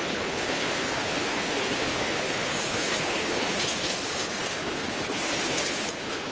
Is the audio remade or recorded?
remade